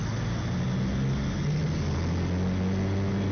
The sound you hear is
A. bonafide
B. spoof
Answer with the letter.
A